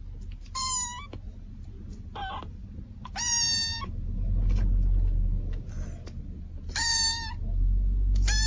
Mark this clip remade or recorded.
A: recorded